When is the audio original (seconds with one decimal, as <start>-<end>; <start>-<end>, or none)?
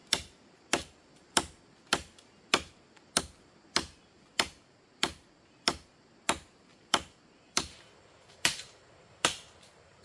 1.6-6.7; 9.6-10.0